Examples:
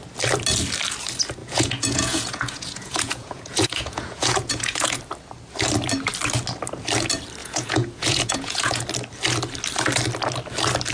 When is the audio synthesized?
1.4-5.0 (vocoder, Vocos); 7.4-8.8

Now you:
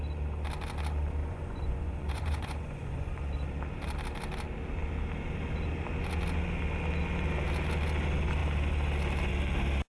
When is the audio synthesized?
1.2-3.2 (vocoder, Vocos)

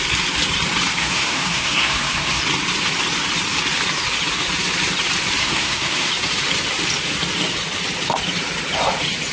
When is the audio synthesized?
1.0-2.4 (codec, SNAC); 5.4-6.1

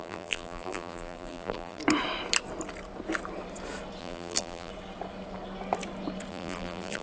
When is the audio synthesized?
0.0-1.8 (vocoder, BigVGAN v2); 4.0-4.7; 6.3-7.0

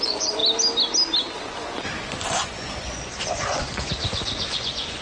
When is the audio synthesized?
0.0-0.4 (vocoder, Vocos); 1.4-5.0

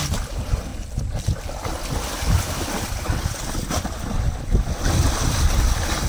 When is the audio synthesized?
none

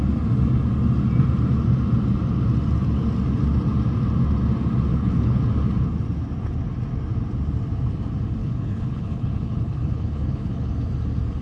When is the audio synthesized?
4.9-5.4 (codec, HILCodec); 8.4-10.7

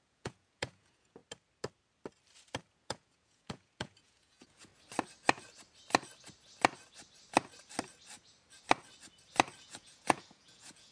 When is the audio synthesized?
0.0-1.2 (vocoder, Vocos); 2.7-4.7; 9.6-10.9